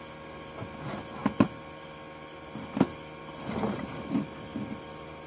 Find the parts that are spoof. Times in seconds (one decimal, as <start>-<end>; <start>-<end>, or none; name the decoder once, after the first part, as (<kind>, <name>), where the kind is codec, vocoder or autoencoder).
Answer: none